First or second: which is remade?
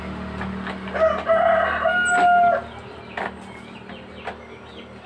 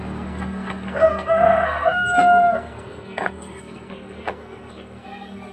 second